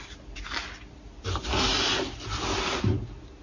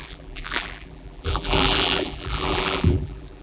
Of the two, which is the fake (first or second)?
second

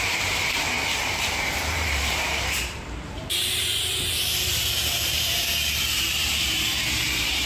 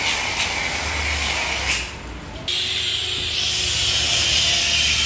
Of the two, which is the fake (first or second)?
first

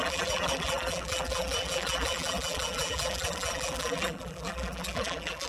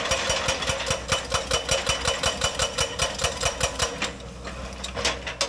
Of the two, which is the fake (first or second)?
first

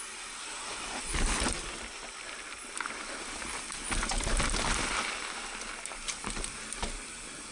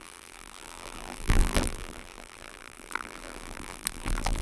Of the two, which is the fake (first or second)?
second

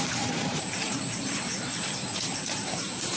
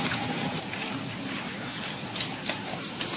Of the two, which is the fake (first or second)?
first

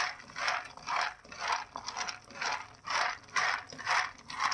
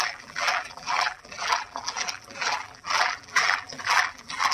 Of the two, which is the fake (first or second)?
second